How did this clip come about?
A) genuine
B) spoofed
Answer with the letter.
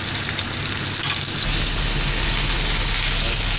A